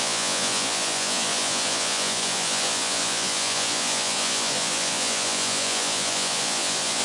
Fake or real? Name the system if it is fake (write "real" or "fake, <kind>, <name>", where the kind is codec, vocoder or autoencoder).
fake, vocoder, Vocos